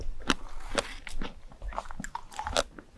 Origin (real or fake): real